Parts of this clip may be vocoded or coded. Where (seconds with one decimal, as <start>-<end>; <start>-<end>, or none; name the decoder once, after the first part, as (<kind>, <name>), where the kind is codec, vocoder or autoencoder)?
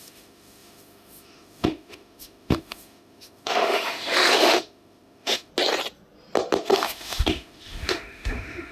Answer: 0.0-5.5 (autoencoder, DAC-VAE); 6.6-8.7